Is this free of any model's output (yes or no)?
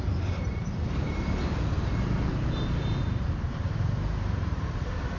no